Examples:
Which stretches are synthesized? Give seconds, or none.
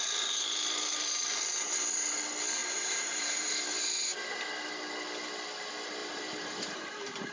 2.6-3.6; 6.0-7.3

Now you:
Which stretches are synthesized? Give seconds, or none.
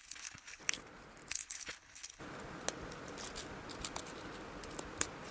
0.0-0.6; 1.3-2.2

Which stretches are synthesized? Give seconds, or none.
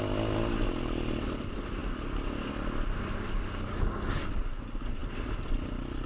none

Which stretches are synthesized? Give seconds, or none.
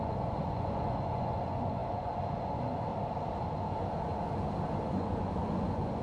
0.0-2.9; 4.8-6.0